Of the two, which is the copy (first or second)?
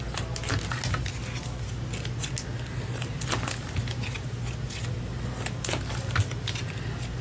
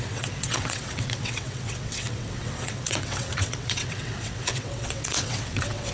second